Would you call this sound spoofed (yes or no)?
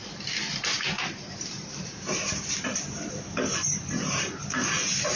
yes